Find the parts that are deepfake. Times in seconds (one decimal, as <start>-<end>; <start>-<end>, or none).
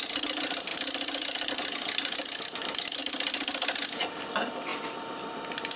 0.7-1.5; 4.7-5.8